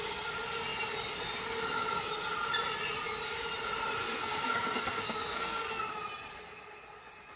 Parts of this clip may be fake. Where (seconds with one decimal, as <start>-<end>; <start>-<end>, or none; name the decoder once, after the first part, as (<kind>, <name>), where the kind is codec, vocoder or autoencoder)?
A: 4.0-5.8 (codec, SNAC)